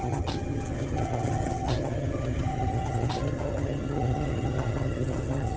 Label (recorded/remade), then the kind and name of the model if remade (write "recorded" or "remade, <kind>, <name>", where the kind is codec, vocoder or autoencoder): remade, vocoder, HiFi-GAN